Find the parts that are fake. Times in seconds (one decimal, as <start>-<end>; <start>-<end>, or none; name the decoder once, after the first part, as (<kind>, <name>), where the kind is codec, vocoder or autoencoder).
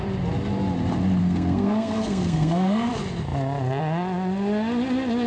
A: 1.2-2.9 (codec, SNAC)